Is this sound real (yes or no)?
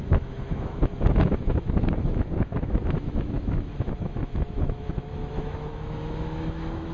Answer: no